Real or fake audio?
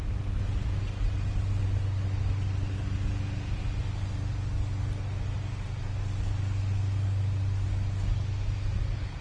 real